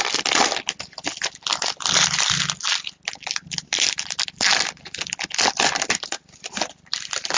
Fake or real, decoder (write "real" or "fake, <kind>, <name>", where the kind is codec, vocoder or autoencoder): real